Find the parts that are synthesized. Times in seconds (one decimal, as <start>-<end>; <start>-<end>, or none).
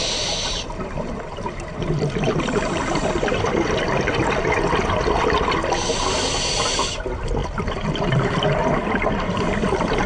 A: none